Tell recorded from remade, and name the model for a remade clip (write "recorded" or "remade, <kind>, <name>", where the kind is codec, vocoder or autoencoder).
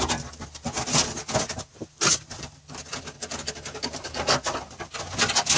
recorded